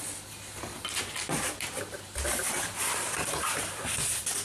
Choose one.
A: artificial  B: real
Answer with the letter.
A